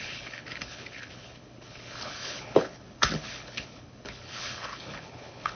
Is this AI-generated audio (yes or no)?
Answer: yes